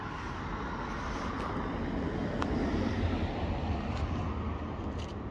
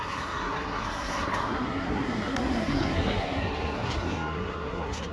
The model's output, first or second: second